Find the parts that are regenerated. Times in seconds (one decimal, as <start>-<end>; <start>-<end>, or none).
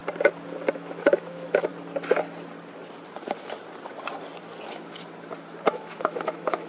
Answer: 0.7-1.7; 5.7-6.7